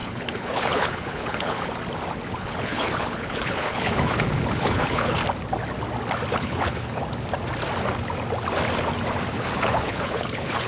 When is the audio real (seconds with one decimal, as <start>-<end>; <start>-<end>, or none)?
1.7-2.3; 5.2-6.3; 7.0-9.3